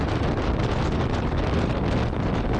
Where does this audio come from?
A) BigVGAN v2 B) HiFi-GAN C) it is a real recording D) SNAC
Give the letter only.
C